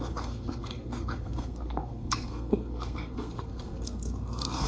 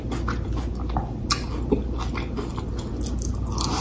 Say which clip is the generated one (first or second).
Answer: first